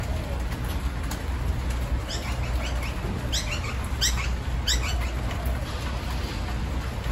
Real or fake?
real